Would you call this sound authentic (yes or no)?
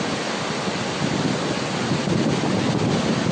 yes